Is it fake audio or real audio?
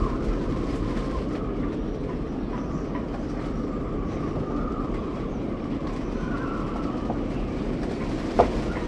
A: real